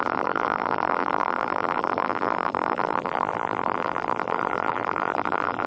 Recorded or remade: remade